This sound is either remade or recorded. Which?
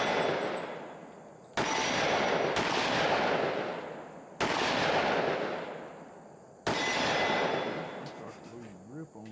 recorded